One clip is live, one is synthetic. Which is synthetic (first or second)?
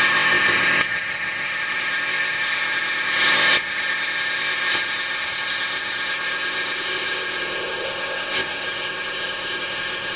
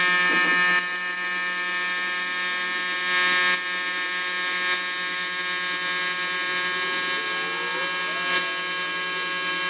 first